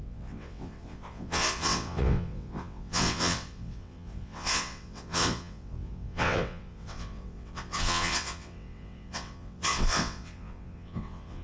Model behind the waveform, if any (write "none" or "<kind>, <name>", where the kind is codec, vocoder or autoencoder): vocoder, WaveNeXt